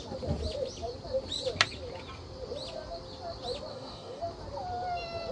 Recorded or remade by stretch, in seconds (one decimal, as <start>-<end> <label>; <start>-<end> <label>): 0.0-3.7 recorded; 3.7-4.2 remade; 4.2-5.3 recorded